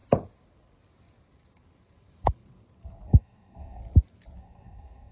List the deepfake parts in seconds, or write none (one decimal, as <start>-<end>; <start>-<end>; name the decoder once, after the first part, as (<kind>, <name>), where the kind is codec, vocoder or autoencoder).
3.1-3.8 (codec, DAC); 4.4-5.1

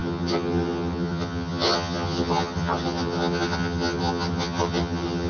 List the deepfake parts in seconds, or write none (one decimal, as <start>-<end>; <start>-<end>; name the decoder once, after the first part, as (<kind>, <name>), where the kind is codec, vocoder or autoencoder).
0.0-5.3 (vocoder, HiFi-GAN)

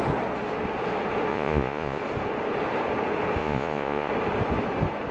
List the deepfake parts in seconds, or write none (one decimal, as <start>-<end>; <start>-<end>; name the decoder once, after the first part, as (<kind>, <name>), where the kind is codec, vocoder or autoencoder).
1.3-2.0 (vocoder, Vocos); 3.4-4.1